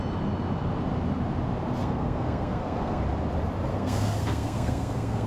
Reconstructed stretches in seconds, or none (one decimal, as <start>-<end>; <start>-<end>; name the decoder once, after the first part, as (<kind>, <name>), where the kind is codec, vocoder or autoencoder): 1.8-3.0 (codec, SNAC); 3.7-5.3